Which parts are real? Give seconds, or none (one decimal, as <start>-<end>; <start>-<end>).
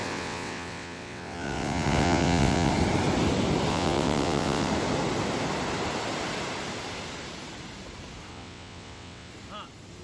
2.7-3.7; 4.7-8.3; 9.3-10.0